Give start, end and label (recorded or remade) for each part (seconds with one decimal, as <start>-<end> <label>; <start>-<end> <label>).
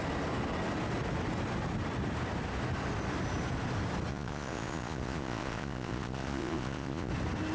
0.0-4.1 recorded; 4.1-7.1 remade; 7.1-7.5 recorded